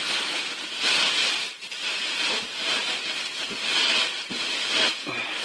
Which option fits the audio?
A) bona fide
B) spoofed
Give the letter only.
A